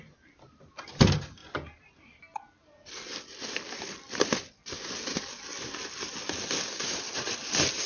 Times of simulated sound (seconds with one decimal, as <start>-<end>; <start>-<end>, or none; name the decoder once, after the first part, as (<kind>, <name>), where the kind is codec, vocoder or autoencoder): none

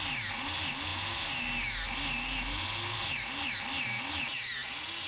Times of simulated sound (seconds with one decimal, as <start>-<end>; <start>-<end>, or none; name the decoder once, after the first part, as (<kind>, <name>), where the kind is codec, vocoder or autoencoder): none